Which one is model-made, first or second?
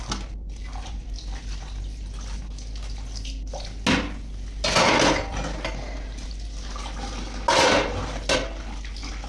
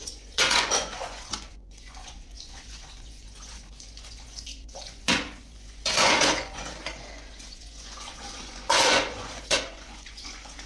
second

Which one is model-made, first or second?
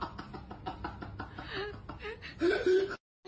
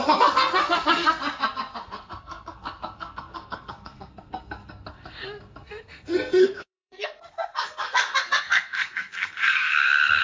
second